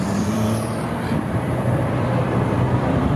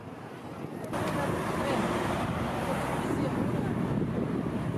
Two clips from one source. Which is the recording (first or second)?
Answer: second